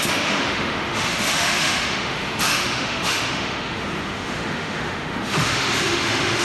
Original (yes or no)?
no